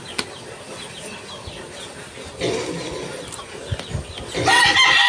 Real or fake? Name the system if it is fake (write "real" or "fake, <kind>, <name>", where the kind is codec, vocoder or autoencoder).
real